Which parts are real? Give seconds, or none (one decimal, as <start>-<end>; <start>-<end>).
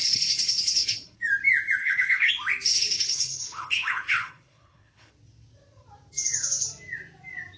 1.2-1.8; 2.3-2.7; 5.1-7.6